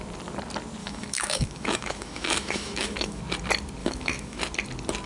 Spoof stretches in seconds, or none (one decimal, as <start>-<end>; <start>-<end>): 0.8-3.2; 3.8-4.4